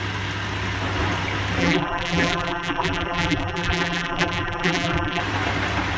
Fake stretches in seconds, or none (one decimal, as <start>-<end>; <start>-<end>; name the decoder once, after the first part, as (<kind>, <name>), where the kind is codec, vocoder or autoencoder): 1.6-5.2 (vocoder, BigVGAN v2)